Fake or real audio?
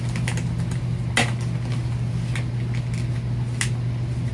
real